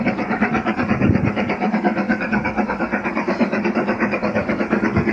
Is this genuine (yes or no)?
no